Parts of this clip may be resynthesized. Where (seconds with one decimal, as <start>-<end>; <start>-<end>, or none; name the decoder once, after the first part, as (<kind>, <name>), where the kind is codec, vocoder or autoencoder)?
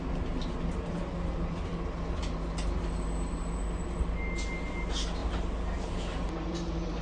5.2-7.0 (vocoder, BigVGAN v2)